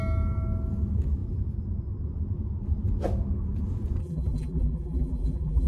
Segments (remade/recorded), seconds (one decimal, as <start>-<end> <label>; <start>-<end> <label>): 0.0-4.0 recorded; 4.0-5.7 remade